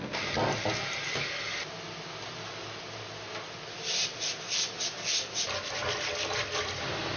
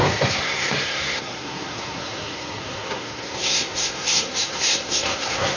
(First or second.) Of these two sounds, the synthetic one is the second